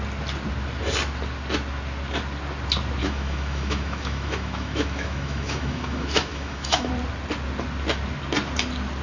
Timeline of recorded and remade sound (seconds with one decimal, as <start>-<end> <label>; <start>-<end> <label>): 0.0-3.0 recorded; 3.0-6.9 remade; 6.9-9.0 recorded